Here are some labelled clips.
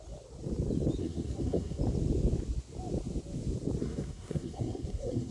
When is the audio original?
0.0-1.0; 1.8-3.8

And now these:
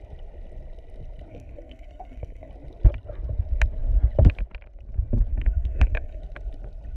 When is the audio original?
0.0-1.3; 2.5-5.3; 6.2-7.0

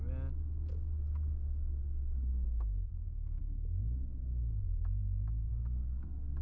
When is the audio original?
0.0-2.3; 3.4-5.5

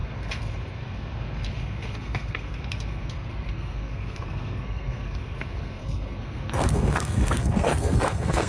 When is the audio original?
none